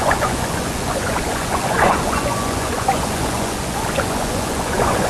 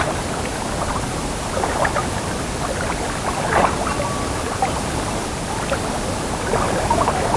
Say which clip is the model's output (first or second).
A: first